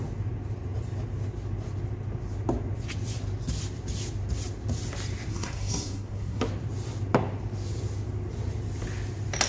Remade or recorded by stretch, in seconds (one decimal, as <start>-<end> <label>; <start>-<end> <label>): 0.0-5.3 recorded; 5.3-6.4 remade; 6.4-9.5 recorded